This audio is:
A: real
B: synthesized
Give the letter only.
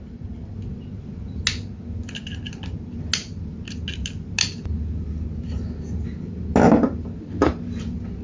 A